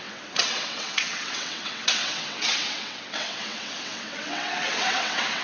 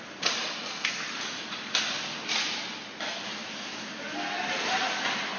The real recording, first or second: second